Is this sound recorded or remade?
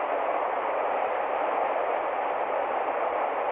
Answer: recorded